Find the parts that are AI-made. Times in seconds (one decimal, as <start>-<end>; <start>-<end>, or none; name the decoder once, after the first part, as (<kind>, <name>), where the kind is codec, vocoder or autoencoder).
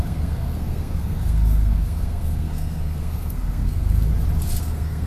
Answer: 0.0-4.1 (codec, SNAC); 4.6-5.1